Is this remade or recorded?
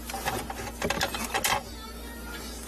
recorded